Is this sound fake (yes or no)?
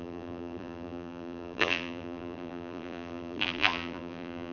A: yes